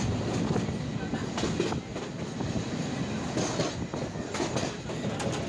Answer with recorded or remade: recorded